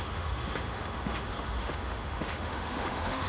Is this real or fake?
fake